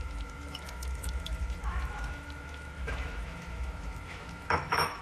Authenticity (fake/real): fake